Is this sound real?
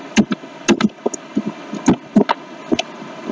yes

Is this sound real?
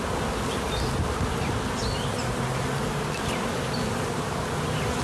yes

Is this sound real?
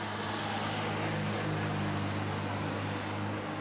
yes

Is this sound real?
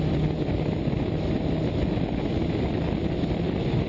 yes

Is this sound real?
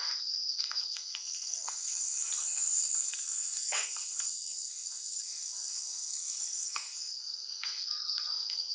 no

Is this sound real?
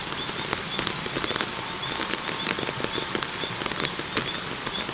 yes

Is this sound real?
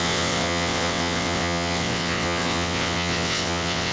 no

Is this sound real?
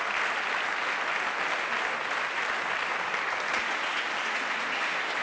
yes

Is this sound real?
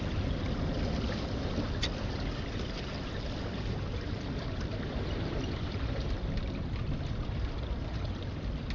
yes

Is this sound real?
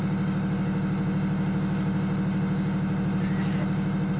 yes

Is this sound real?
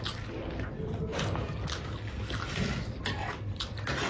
yes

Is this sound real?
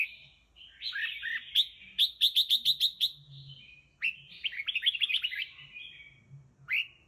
yes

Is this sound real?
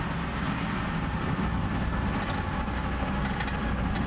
yes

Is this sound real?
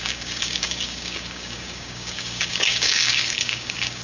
no